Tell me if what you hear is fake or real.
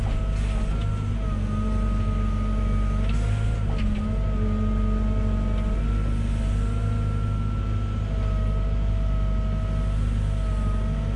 real